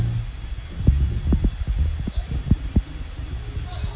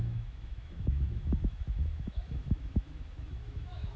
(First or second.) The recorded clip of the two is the first